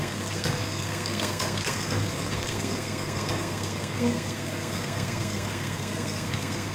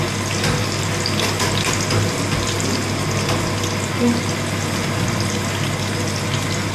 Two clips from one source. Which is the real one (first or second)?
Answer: second